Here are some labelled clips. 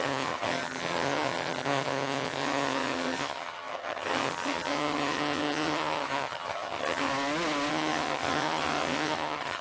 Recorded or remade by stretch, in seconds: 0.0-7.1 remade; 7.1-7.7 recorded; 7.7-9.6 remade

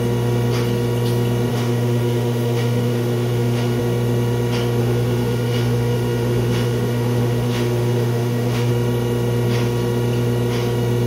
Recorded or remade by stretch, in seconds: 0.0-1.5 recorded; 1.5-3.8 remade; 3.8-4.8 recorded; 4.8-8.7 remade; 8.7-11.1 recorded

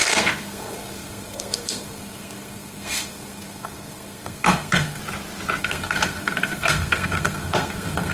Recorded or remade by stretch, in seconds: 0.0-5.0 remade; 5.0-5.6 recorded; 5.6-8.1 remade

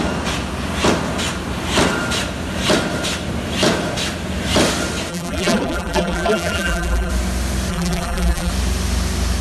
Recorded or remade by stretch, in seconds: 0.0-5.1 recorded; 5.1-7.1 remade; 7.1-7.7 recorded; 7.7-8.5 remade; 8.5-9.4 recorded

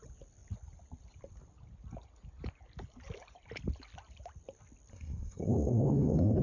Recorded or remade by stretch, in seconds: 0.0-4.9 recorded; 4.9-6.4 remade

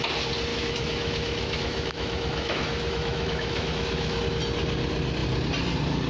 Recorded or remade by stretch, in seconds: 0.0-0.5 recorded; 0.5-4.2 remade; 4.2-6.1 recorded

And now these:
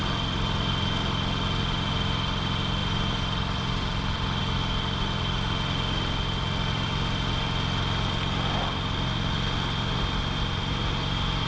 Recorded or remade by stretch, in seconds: 0.0-2.8 recorded; 2.8-4.4 remade; 4.4-11.5 recorded

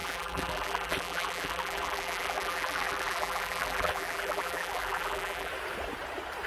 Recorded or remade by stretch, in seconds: 0.0-5.5 remade; 5.5-6.5 recorded